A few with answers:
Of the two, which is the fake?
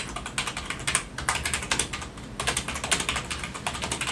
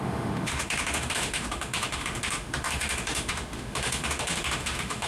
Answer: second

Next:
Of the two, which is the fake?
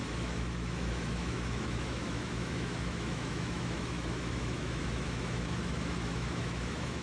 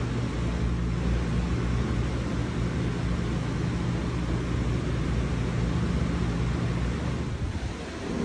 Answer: first